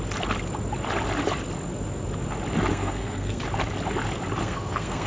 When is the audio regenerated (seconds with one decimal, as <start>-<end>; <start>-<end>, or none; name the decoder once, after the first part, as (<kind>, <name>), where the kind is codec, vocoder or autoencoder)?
2.7-3.4 (codec, SNAC); 4.4-5.1